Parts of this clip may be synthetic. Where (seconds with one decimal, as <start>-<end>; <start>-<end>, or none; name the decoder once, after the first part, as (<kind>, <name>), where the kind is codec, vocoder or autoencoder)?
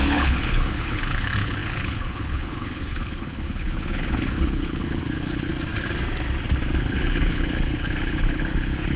0.0-5.5 (codec, HILCodec); 6.8-9.0